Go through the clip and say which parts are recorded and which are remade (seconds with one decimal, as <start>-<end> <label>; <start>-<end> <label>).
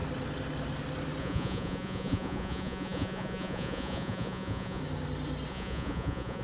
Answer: 0.0-1.2 recorded; 1.2-4.8 remade; 4.8-5.5 recorded; 5.5-6.4 remade